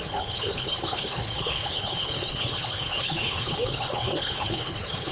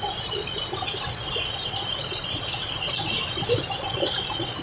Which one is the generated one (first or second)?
first